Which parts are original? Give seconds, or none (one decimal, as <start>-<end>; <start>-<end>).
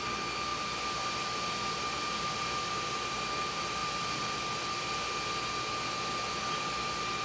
0.0-7.2